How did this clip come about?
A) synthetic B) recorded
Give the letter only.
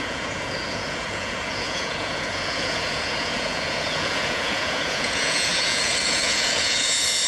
A